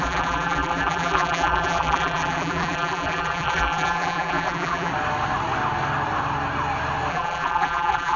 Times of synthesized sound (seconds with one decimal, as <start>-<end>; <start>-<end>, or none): 0.0-4.9; 7.1-8.2